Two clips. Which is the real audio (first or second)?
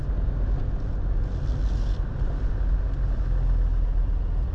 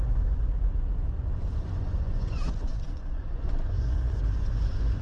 first